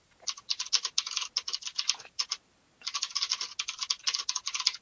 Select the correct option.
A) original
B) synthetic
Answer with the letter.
A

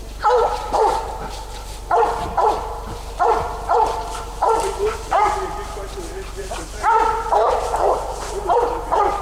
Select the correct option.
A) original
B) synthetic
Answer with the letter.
B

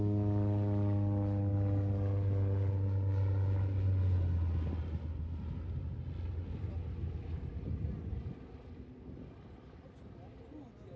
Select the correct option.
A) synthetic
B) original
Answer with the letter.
B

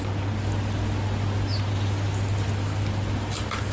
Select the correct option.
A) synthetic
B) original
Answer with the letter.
B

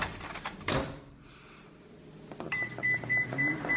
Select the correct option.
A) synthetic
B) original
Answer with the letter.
A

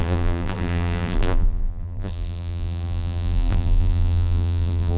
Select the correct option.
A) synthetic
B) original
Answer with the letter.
A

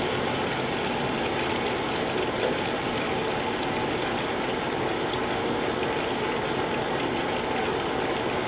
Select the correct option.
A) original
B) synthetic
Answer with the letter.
A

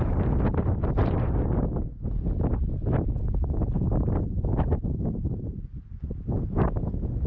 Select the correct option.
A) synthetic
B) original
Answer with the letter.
B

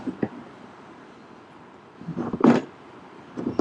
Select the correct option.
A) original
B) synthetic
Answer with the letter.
B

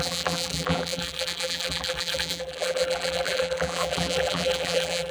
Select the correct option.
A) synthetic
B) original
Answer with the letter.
A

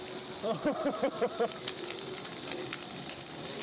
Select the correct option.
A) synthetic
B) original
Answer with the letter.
A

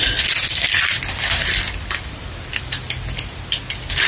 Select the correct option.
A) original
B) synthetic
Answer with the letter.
B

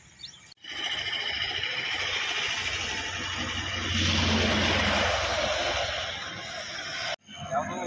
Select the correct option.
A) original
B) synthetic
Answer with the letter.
A